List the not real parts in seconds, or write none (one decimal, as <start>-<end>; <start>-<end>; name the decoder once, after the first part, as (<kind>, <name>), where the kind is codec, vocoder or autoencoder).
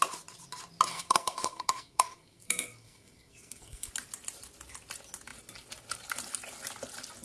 0.9-3.9 (codec, SNAC)